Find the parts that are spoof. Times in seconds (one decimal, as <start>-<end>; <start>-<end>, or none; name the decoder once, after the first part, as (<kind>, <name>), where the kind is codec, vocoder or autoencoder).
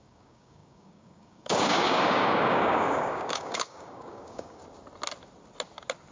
0.0-4.6 (codec, DAC)